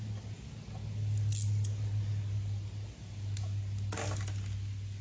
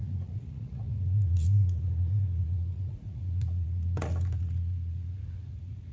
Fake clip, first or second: second